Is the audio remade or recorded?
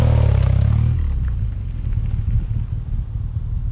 recorded